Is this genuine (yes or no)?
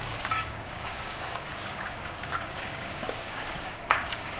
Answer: no